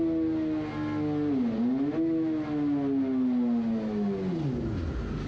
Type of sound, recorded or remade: recorded